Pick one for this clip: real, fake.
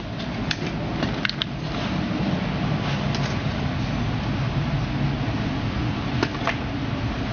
real